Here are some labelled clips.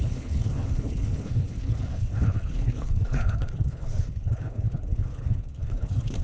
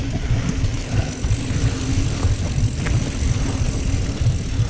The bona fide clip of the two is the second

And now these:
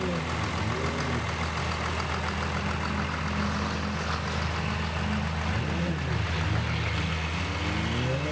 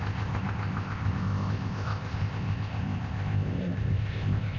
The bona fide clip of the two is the first